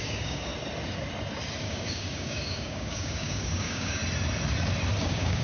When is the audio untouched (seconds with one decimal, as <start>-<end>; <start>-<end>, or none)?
0.5-1.6; 4.0-5.0